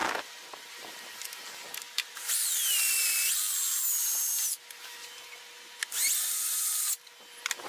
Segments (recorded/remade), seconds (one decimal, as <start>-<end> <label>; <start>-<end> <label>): 0.0-7.7 recorded